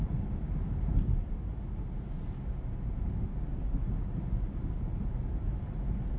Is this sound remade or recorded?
recorded